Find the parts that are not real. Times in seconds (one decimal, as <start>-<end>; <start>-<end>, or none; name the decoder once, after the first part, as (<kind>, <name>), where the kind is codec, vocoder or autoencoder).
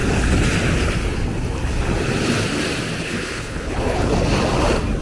3.0-4.1 (codec, HILCodec)